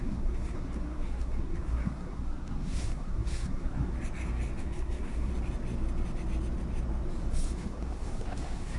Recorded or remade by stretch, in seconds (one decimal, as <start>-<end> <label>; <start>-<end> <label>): 0.0-3.9 remade; 3.9-4.6 recorded; 4.6-5.3 remade; 5.3-7.3 recorded; 7.3-8.8 remade